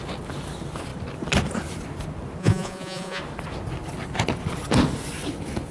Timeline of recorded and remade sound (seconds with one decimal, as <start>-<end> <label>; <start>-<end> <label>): 0.0-2.4 recorded; 2.4-3.2 remade; 3.2-5.7 recorded